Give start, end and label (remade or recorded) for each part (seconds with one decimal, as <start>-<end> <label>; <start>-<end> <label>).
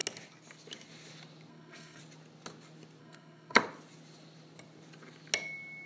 0.0-1.5 recorded; 1.5-2.0 remade; 2.0-3.0 recorded; 3.0-3.6 remade; 3.6-5.9 recorded